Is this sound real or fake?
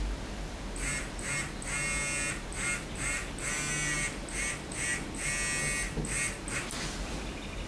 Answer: real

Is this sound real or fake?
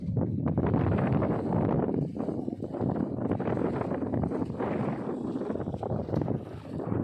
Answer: real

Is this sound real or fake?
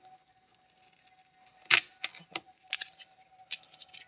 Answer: real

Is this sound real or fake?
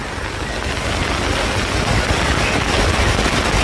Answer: real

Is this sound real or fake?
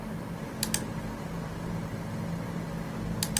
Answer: real